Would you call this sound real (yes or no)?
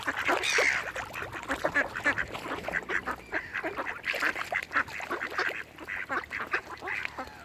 yes